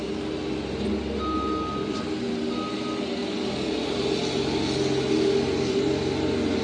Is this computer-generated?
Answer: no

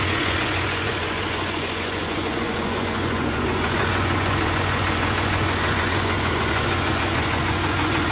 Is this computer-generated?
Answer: yes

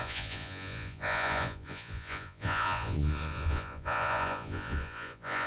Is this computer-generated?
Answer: yes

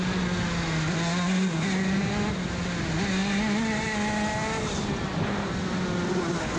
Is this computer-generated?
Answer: no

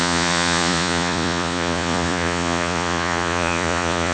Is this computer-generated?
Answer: yes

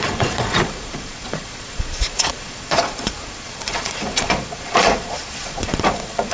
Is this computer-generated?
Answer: yes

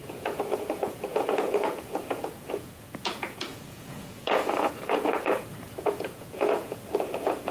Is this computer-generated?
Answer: yes